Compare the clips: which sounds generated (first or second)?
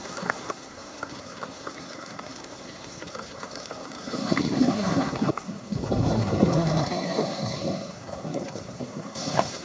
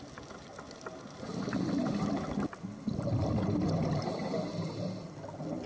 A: first